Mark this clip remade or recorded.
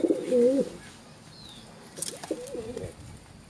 recorded